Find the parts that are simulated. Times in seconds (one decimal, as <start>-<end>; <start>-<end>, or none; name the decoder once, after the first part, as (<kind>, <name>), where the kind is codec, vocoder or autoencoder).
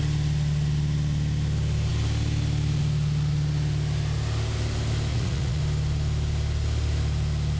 5.1-5.6 (vocoder, Vocos)